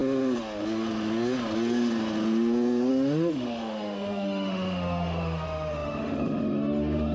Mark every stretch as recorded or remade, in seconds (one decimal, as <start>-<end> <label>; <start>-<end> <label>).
0.0-2.9 recorded; 2.9-7.1 remade